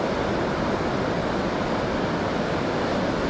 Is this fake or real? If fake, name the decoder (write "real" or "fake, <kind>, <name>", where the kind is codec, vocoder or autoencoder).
real